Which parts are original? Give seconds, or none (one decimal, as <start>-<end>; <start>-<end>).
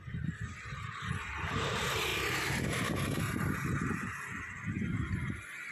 2.1-5.7